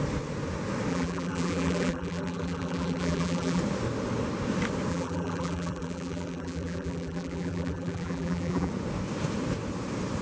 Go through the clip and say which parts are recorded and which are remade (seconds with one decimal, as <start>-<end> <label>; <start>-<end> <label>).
0.0-0.9 recorded; 0.9-3.6 remade; 3.6-4.9 recorded; 4.9-8.7 remade; 8.7-10.2 recorded